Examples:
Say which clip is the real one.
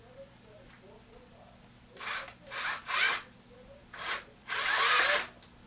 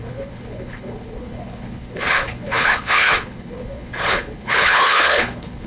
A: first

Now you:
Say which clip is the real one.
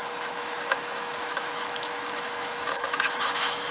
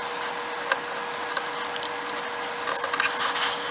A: second